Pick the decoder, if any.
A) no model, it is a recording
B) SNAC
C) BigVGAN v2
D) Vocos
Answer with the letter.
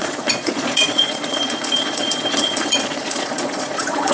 D